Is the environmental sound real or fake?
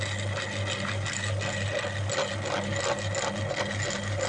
real